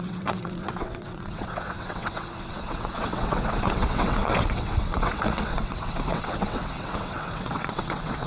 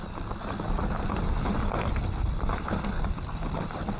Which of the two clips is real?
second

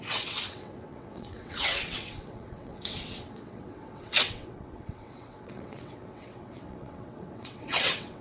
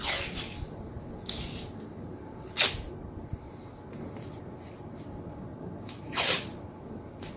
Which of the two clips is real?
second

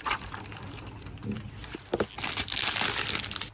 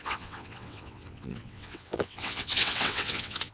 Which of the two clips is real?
first